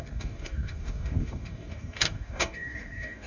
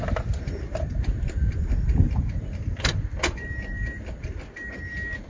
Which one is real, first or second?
second